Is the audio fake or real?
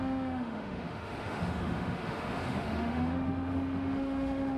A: fake